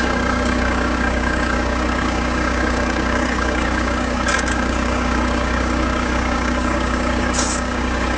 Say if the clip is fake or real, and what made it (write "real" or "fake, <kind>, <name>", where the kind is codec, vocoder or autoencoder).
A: fake, codec, DAC